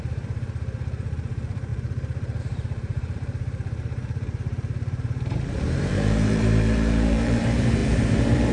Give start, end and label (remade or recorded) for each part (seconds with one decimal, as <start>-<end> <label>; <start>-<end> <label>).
0.0-8.5 remade